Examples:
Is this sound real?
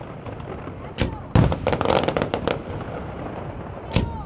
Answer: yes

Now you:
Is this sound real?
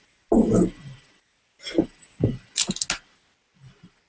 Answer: yes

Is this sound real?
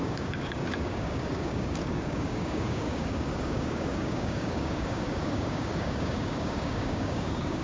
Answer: no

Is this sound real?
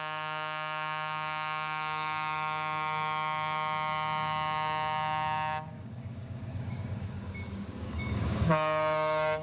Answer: no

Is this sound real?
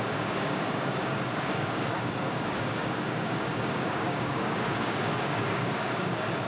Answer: no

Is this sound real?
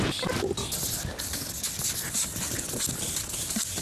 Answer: yes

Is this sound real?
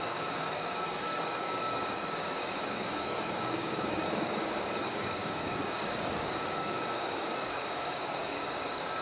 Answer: no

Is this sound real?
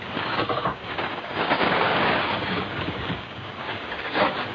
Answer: no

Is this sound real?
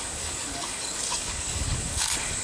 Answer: no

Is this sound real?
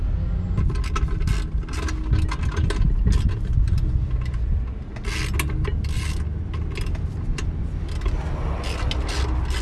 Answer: yes